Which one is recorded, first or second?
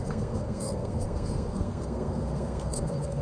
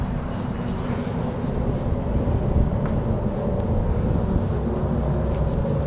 second